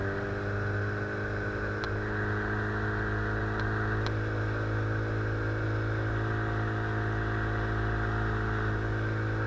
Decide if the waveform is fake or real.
real